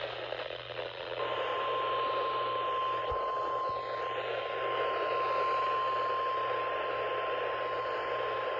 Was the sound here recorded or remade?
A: recorded